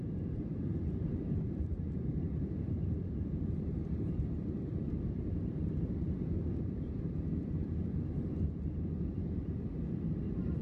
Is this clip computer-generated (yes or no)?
yes